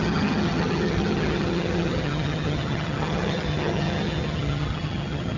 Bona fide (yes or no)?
no